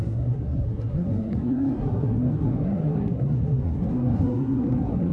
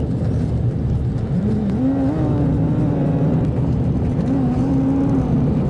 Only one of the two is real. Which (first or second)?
second